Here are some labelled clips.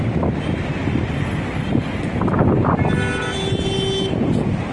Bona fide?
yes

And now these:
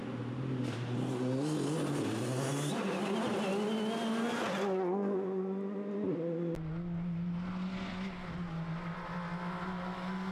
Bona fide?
yes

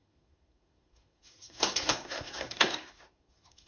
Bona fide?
no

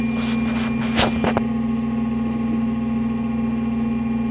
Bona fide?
yes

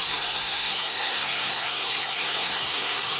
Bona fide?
no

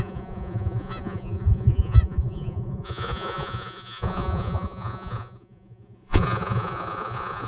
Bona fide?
no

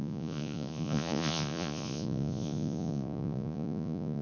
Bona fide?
no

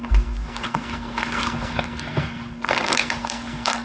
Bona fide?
no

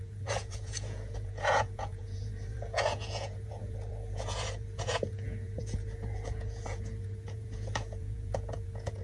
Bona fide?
no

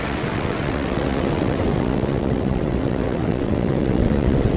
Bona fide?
no